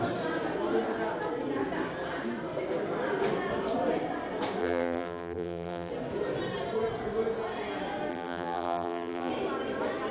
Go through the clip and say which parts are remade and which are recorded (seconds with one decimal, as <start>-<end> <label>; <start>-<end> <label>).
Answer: 0.0-4.6 recorded; 4.6-5.9 remade; 5.9-8.1 recorded; 8.1-9.3 remade; 9.3-10.1 recorded